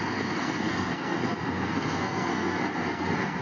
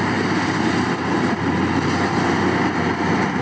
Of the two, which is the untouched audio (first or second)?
second